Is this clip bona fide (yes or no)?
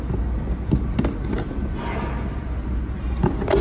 yes